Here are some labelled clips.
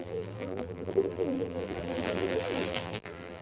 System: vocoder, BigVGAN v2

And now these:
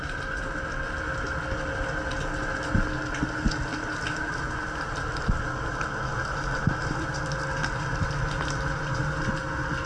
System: none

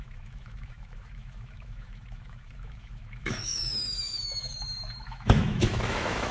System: autoencoder, DAC-VAE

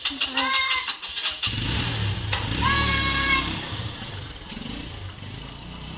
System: none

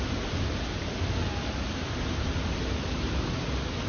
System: none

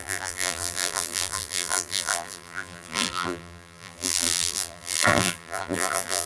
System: vocoder, BigVGAN v2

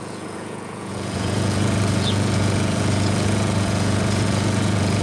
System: vocoder, Vocos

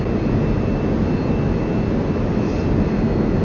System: none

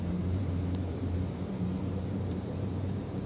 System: vocoder, BigVGAN v2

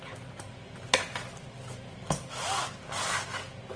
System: none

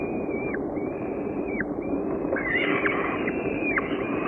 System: vocoder, BigVGAN v2